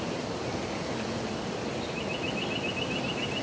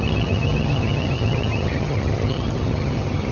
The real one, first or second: first